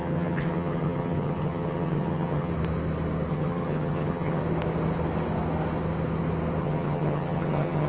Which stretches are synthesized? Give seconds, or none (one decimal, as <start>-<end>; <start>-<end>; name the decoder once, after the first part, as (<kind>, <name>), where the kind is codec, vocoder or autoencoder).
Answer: 0.0-2.5 (vocoder, HiFi-GAN); 3.3-4.4; 6.6-7.9